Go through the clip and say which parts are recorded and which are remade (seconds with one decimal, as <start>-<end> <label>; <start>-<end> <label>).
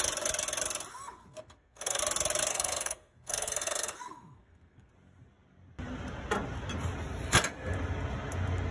0.0-0.9 recorded; 0.9-2.0 remade; 2.0-2.5 recorded; 2.5-4.9 remade; 4.9-8.7 recorded